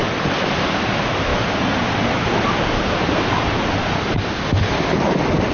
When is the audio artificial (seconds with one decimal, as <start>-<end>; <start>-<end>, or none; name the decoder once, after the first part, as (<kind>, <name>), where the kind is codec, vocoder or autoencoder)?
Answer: none